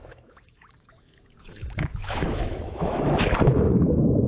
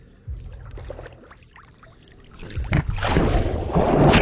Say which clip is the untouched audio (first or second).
second